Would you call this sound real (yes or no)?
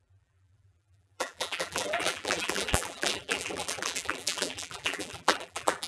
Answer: no